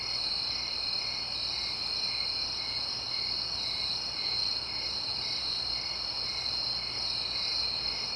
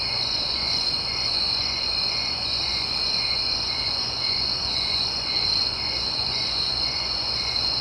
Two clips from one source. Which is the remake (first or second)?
second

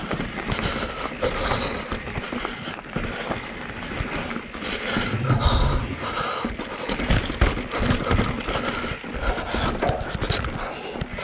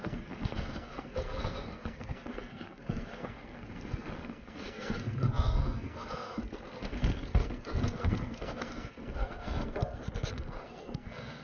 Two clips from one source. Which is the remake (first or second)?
second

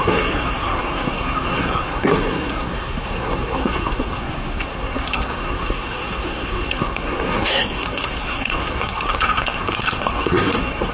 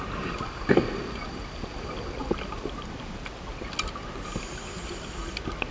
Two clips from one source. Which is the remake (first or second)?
first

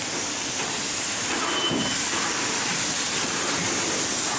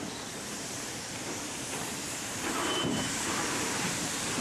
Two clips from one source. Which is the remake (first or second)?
second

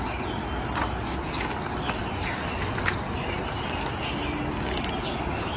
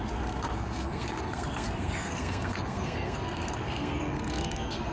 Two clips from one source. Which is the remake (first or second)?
second